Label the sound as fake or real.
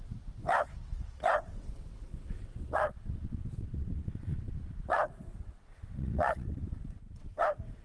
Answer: fake